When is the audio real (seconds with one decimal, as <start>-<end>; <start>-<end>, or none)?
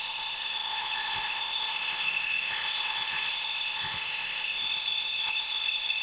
none